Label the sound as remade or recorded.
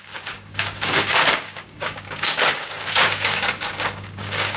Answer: remade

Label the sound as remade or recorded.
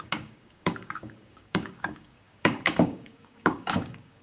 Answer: remade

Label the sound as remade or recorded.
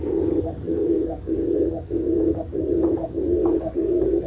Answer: remade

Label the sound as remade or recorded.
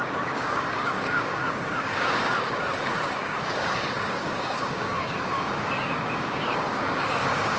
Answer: remade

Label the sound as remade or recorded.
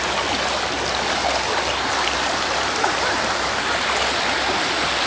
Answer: recorded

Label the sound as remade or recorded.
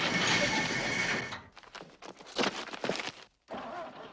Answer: recorded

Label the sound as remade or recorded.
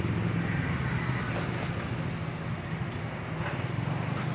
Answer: recorded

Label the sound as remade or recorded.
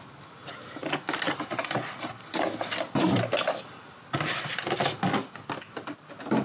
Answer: recorded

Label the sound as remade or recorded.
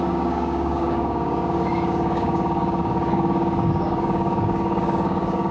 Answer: remade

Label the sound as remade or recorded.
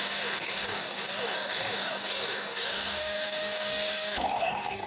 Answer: remade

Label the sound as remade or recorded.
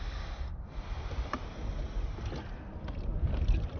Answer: recorded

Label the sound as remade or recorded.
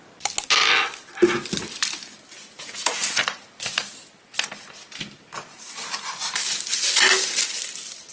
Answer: recorded